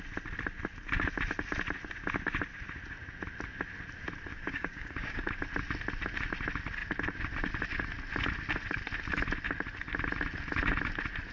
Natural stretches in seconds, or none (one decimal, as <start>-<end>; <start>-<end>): 0.0-4.3; 5.3-11.3